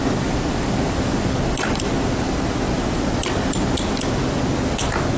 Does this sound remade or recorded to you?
recorded